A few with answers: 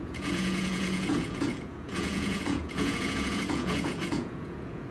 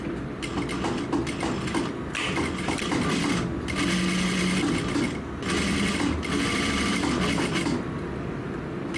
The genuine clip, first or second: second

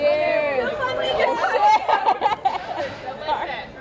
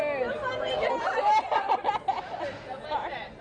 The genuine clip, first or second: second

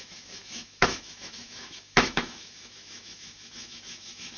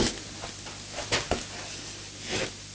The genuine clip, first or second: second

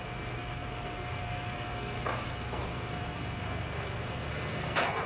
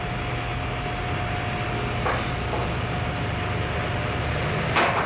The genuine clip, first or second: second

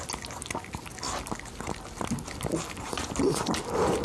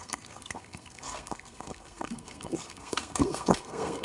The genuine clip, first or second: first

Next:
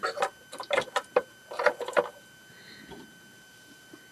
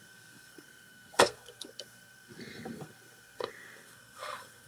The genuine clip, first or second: first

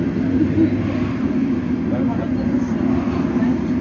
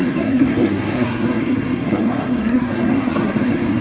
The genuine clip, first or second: first